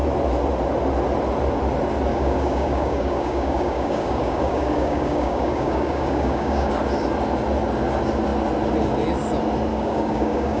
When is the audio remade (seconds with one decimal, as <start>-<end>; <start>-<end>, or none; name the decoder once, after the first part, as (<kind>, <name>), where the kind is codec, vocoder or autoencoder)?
2.1-6.7 (codec, DAC); 9.7-10.6